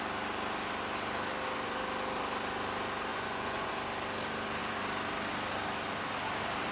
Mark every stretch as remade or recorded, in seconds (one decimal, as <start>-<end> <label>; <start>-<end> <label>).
0.0-3.1 recorded; 3.1-3.7 remade; 3.7-6.7 recorded